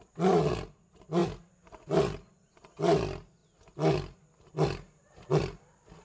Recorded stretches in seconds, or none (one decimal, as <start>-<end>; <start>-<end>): 0.0-6.0